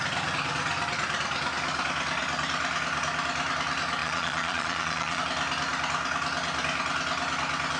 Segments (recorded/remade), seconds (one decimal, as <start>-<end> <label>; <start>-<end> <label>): 0.0-4.0 recorded; 4.0-5.2 remade; 5.2-7.8 recorded